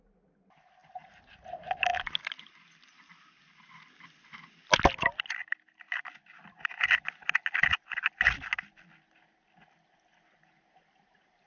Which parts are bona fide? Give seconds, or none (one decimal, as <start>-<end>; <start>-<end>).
0.0-0.8; 1.4-11.5